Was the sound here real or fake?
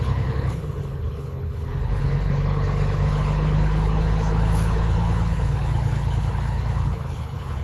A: fake